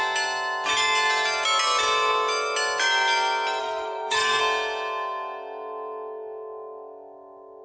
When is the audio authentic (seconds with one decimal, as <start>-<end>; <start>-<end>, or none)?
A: 0.0-3.6; 4.4-7.6